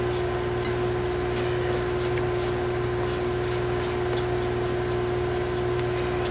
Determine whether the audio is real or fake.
real